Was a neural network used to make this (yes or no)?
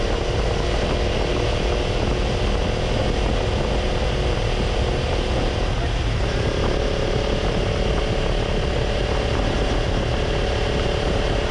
no